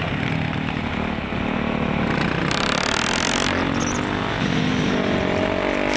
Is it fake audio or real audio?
real